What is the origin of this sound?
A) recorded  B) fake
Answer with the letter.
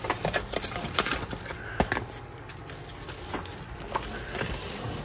A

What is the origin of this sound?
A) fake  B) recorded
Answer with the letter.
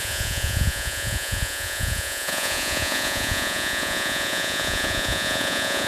A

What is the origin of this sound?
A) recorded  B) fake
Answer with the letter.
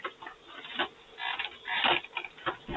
A